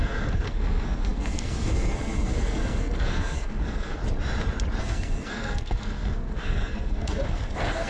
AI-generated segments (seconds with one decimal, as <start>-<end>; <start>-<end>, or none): 0.0-4.0; 4.8-7.9